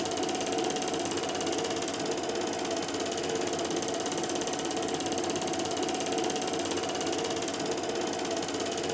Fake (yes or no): no